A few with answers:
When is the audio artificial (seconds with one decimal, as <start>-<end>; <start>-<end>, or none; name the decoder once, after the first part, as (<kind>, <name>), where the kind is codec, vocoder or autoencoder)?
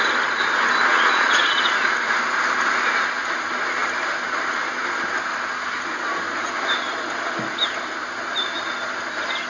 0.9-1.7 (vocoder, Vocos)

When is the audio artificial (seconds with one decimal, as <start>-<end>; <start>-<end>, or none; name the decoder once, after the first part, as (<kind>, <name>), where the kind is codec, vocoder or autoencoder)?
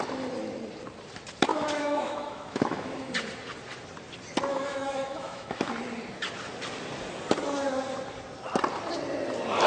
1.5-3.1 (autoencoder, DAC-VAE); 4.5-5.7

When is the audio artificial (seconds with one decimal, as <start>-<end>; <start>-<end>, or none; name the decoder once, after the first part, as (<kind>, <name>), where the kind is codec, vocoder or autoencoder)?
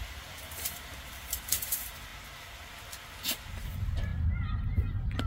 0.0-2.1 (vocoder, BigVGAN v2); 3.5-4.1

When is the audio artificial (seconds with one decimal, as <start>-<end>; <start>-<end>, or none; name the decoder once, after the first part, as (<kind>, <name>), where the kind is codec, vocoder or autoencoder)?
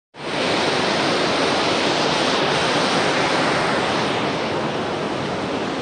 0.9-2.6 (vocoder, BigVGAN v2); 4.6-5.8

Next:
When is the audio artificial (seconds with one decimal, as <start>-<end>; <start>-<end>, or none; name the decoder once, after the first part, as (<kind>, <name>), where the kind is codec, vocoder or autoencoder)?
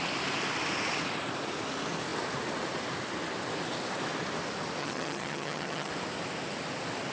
4.8-5.9 (vocoder, HiFi-GAN)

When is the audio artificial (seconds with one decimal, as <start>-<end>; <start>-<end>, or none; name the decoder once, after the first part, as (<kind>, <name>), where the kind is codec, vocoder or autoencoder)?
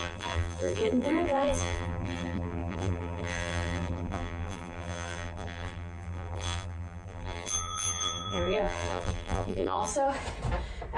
0.0-9.9 (vocoder, BigVGAN v2)